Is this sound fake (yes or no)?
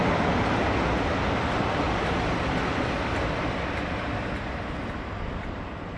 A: no